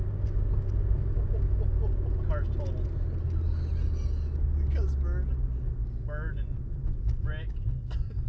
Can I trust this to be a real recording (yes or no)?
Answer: yes